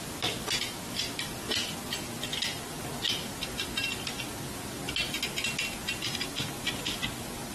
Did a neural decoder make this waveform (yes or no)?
no